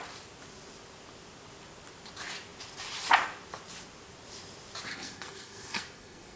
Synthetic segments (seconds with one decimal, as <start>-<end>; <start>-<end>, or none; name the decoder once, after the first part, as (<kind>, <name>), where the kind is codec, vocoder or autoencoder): 4.9-6.4 (codec, SNAC)

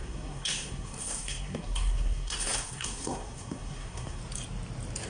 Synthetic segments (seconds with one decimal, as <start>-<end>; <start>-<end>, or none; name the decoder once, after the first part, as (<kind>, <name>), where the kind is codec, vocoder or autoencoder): 0.0-4.2 (codec, SNAC)